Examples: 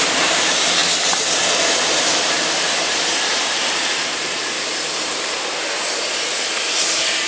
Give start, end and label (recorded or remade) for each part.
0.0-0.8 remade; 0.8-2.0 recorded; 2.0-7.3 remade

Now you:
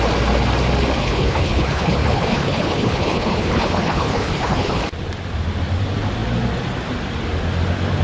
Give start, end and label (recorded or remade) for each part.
0.0-1.0 recorded; 1.0-4.8 remade; 4.8-8.0 recorded

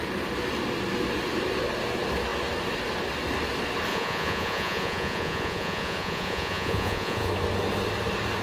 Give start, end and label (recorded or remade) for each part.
0.0-3.9 recorded; 3.9-7.3 remade; 7.3-8.4 recorded

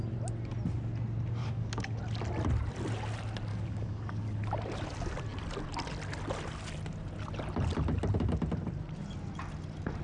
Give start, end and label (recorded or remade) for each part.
0.0-1.4 recorded; 1.4-2.0 remade; 2.0-3.5 recorded; 3.5-4.4 remade; 4.4-10.0 recorded

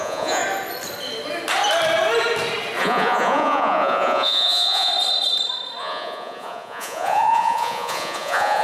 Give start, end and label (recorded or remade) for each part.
0.0-0.4 remade; 0.4-2.8 recorded; 2.8-4.9 remade; 4.9-5.8 recorded; 5.8-8.6 remade

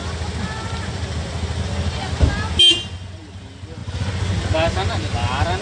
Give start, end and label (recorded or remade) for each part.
0.0-5.6 recorded

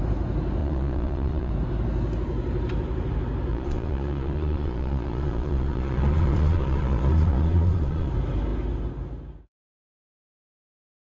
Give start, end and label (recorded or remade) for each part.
0.0-0.6 recorded; 0.6-1.5 remade; 1.5-3.5 recorded; 3.5-8.1 remade; 8.1-11.1 recorded